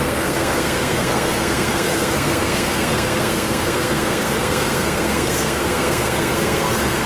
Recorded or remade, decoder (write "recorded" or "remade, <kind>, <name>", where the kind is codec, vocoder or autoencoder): remade, codec, SNAC